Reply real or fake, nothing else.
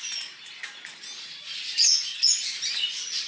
real